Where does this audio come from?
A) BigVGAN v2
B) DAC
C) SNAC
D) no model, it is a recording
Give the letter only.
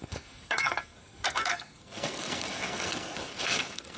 C